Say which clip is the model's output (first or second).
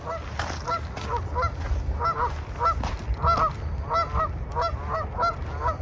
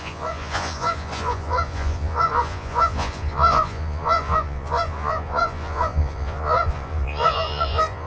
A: second